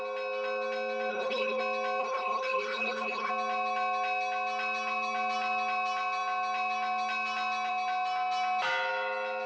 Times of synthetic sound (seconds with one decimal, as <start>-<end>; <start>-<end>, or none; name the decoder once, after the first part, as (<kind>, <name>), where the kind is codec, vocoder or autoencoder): 1.1-1.6 (codec, HILCodec); 2.0-3.3